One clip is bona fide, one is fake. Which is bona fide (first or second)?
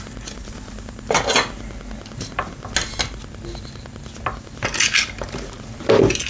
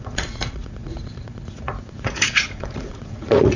first